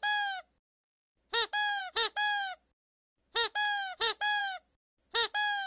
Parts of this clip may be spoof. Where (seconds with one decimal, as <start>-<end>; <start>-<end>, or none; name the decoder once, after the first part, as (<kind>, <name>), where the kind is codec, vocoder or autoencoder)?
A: none